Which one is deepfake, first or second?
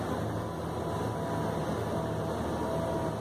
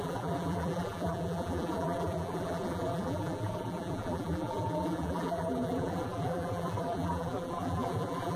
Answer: second